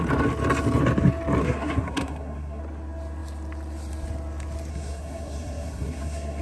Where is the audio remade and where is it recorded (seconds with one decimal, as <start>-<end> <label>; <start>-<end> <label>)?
0.0-1.4 recorded; 1.4-2.6 remade; 2.6-4.7 recorded; 4.7-6.4 remade